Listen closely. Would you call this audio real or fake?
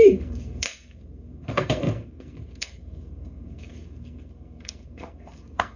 fake